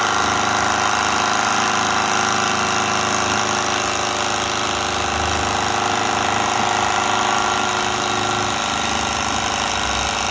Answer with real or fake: real